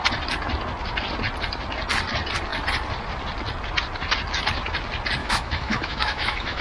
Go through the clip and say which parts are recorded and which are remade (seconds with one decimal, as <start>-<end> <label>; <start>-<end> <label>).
0.0-5.2 recorded; 5.2-6.6 remade